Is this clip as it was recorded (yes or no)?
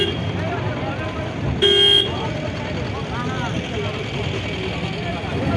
yes